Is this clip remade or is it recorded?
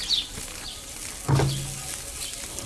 recorded